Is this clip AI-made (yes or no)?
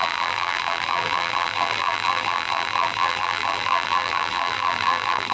yes